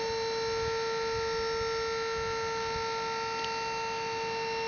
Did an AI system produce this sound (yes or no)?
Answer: no